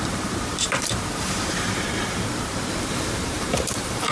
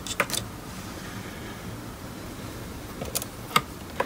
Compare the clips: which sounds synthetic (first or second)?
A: first